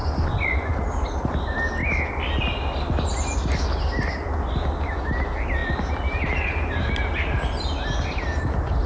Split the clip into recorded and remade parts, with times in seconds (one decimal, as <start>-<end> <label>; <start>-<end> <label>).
0.0-0.7 remade; 0.7-8.9 recorded